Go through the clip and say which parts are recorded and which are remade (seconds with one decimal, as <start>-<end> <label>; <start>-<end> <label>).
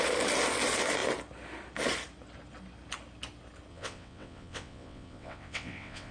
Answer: 0.0-3.7 recorded; 3.7-6.1 remade